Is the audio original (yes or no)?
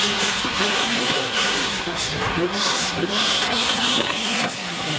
no